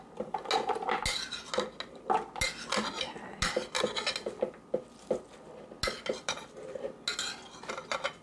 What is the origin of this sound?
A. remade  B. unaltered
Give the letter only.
B